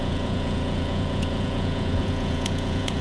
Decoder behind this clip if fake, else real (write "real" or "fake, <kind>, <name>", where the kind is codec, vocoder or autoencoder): fake, vocoder, Vocos